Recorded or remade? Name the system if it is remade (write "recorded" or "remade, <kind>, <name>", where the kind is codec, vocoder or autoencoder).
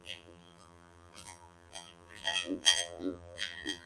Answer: remade, vocoder, BigVGAN v2